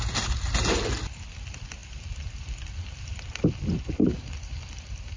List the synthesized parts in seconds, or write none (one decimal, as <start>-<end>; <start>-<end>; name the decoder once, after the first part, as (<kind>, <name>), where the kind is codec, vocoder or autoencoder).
none